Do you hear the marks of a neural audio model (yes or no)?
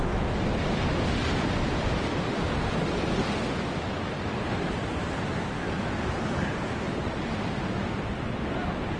no